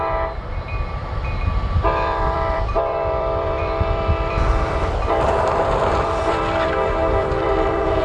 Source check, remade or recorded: remade